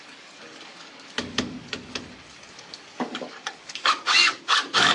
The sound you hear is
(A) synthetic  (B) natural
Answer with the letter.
A